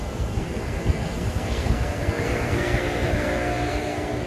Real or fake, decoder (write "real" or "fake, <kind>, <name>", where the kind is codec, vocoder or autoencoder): fake, codec, SNAC